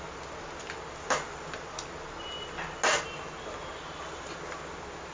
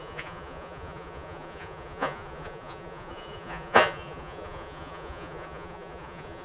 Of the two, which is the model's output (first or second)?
second